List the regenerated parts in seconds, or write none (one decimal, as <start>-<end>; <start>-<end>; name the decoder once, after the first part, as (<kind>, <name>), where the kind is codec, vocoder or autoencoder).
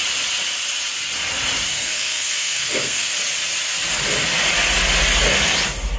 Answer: 1.7-3.1 (codec, SNAC)